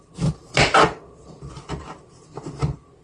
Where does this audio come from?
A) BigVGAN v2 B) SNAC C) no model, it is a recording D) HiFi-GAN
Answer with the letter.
A